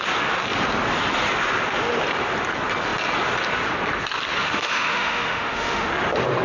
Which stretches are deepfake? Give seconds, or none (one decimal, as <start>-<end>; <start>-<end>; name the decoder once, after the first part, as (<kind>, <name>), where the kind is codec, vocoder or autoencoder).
4.4-5.9 (autoencoder, DAC-VAE)